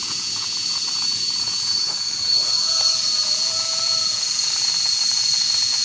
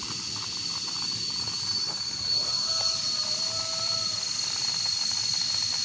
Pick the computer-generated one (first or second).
first